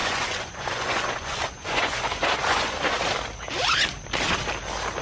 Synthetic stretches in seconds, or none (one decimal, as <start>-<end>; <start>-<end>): 0.0-3.0